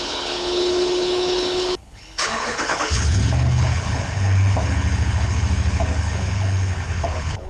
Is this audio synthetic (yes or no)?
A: yes